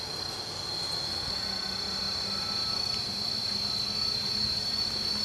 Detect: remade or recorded recorded